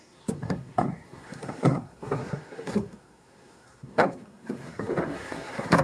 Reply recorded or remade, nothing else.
remade